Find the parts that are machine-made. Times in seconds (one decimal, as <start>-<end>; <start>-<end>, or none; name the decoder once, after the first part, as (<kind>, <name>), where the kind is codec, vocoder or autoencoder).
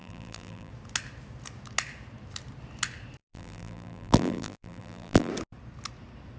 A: 0.0-0.7 (vocoder, BigVGAN v2); 3.2-5.3